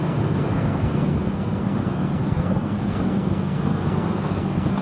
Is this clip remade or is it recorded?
remade